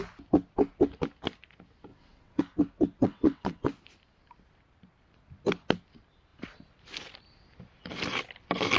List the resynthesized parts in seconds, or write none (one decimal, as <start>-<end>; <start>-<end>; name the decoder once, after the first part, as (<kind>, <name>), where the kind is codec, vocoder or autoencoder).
1.9-2.4 (vocoder, WaveNeXt); 3.0-3.7